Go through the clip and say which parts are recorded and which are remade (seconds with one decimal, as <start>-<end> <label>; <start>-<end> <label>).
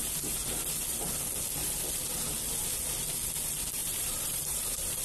0.0-3.8 recorded; 3.8-5.0 remade